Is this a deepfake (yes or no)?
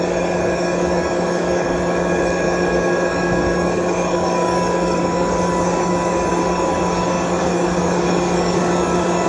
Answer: yes